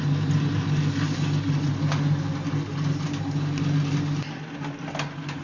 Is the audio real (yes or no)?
yes